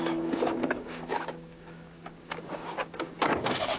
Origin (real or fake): fake